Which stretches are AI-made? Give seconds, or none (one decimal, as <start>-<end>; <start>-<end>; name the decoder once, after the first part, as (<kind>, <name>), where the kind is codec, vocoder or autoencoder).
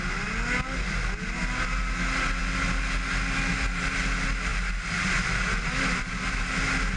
none